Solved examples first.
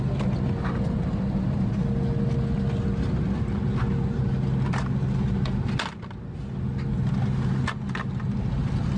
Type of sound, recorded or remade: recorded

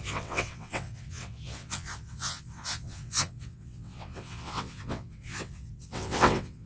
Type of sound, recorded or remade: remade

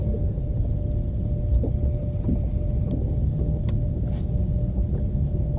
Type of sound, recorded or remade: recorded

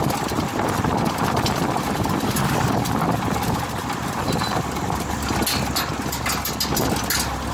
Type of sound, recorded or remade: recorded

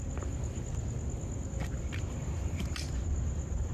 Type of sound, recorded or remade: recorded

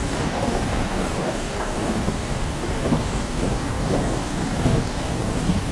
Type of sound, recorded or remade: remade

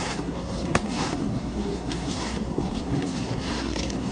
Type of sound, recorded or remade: remade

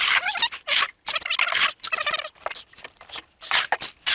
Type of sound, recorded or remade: recorded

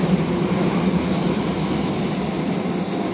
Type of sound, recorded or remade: recorded